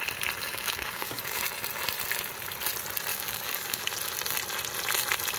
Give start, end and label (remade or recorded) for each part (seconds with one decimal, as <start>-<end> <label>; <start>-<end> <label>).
0.0-0.4 recorded; 0.4-1.4 remade; 1.4-3.1 recorded; 3.1-3.8 remade; 3.8-5.4 recorded

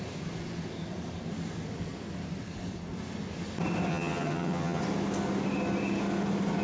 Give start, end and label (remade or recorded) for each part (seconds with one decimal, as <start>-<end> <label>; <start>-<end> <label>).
0.0-3.9 recorded; 3.9-4.8 remade; 4.8-6.6 recorded